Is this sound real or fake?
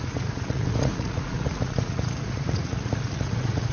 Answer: fake